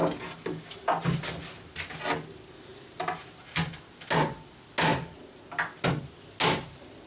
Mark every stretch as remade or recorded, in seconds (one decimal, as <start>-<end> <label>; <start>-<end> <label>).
0.0-7.1 recorded